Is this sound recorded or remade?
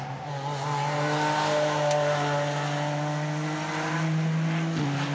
recorded